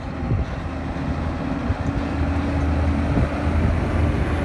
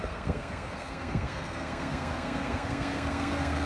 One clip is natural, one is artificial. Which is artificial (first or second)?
second